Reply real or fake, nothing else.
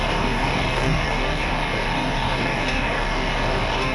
fake